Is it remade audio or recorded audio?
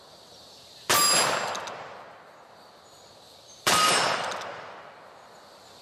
recorded